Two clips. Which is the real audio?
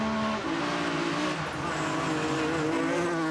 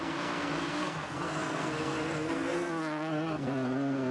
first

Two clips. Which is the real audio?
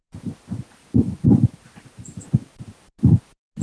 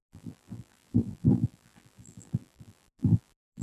first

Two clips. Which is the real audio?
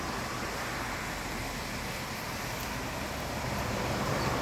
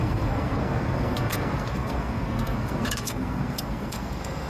first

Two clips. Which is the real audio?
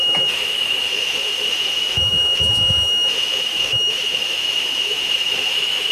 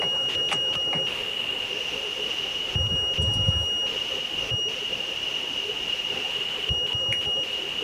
second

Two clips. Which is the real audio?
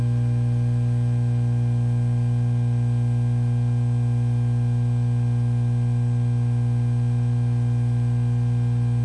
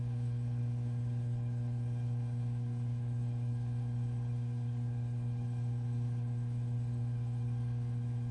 first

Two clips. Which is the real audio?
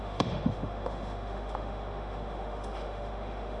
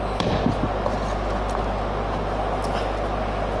second